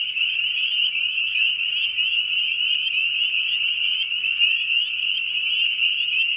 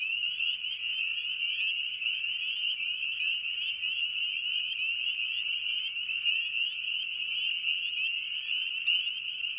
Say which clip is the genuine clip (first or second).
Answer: second